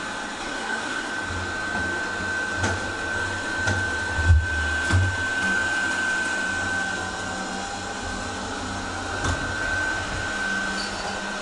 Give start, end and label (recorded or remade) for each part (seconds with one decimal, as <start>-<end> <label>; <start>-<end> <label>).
0.0-0.4 recorded; 0.4-1.1 remade; 1.1-11.4 recorded